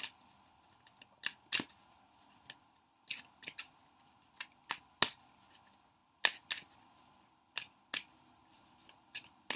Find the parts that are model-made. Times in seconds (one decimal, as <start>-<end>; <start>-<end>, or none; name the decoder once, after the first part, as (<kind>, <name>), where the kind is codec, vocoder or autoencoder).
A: none